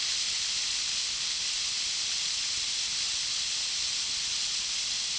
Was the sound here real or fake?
real